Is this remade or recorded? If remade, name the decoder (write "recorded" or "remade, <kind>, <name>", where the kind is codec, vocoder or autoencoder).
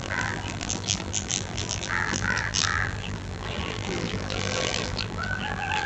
remade, vocoder, BigVGAN v2